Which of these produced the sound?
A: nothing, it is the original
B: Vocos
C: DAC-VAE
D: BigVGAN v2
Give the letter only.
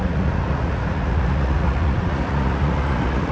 B